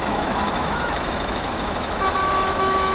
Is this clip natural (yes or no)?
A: no